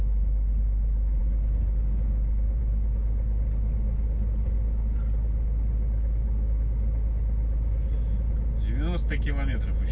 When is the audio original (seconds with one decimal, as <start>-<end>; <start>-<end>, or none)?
0.0-9.9